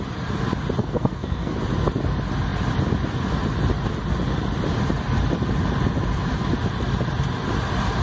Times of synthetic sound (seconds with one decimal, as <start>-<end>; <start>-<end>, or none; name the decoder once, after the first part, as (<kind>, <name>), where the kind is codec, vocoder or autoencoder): 0.8-1.6 (codec, SNAC)

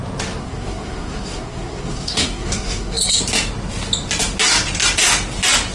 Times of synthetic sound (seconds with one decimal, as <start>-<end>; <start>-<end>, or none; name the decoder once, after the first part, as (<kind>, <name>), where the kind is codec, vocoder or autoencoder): 0.4-3.2 (codec, SNAC)

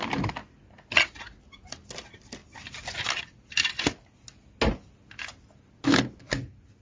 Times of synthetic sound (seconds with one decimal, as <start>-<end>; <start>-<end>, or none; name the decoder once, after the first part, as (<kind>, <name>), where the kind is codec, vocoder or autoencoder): none

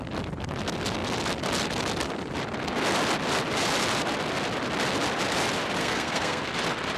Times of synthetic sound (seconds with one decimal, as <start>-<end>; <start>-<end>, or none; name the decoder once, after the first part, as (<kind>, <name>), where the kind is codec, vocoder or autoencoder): 5.8-6.4 (codec, SNAC)

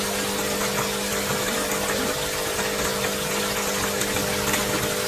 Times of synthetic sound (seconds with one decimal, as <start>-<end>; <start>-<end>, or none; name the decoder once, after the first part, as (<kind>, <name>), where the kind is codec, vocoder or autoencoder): none

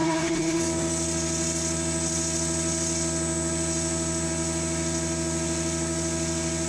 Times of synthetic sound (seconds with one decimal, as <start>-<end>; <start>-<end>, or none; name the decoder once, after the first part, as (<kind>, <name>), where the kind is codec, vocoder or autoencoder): 0.0-0.6 (codec, SNAC)

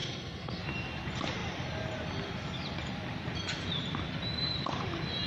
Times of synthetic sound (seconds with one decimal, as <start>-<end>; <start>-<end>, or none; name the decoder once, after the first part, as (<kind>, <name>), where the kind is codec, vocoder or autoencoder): 0.0-0.6 (codec, SNAC)

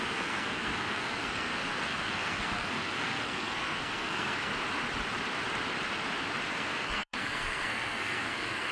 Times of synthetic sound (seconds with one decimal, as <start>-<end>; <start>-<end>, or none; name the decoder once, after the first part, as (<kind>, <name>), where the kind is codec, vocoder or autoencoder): 0.0-4.5 (codec, SNAC); 6.5-8.7